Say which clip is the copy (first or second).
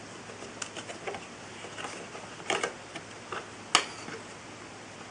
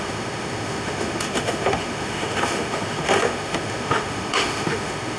second